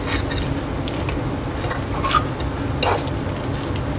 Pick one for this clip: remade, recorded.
recorded